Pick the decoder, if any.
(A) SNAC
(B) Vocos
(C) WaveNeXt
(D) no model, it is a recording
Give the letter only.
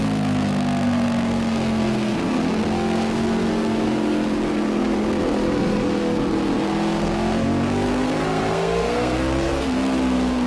A